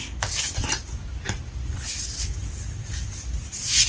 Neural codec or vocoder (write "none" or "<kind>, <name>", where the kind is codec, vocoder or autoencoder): none